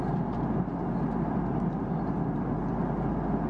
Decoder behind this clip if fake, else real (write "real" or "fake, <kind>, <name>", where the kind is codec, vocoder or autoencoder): real